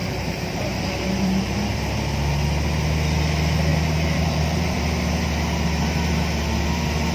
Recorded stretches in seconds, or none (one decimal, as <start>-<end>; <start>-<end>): 1.8-3.7; 4.8-7.1